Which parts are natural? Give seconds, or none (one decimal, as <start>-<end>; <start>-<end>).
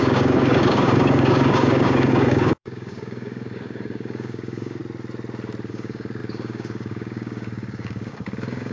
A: 4.8-5.7